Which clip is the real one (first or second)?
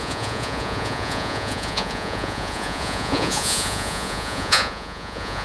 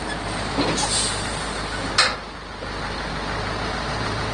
second